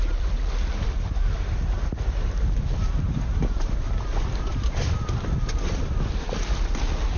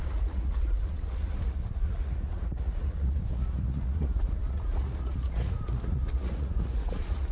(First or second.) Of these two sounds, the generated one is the second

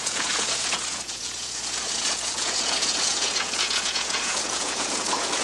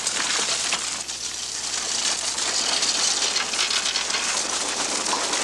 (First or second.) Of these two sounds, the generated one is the first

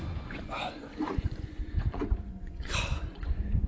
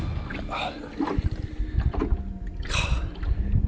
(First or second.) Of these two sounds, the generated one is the first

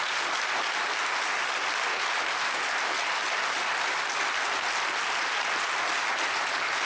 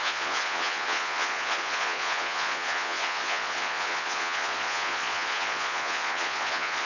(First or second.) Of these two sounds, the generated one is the second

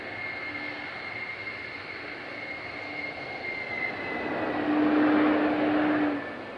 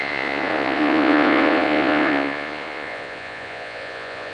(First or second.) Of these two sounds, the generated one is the second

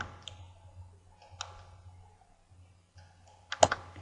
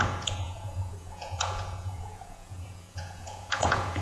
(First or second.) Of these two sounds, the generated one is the second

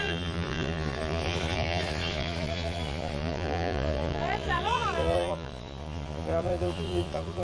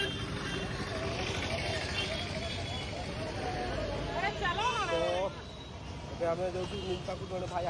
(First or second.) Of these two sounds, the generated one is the first